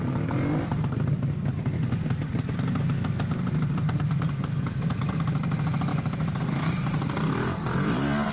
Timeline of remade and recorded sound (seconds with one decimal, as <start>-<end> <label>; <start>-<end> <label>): 0.0-8.3 recorded